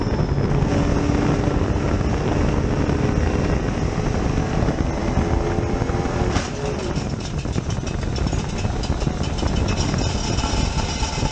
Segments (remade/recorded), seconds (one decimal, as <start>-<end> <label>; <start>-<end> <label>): 0.0-11.3 recorded